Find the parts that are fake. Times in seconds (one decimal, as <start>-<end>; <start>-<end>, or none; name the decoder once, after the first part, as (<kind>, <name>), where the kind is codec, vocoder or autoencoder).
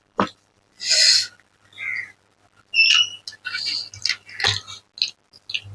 0.0-0.8 (vocoder, BigVGAN v2)